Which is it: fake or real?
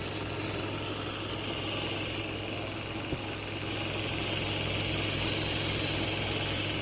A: real